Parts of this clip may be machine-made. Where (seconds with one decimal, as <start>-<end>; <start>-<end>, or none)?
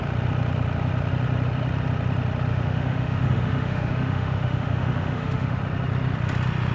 2.5-5.6